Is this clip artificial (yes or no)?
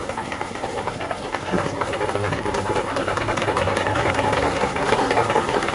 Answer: yes